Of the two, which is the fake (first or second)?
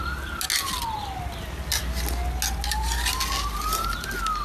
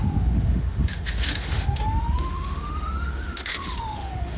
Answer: second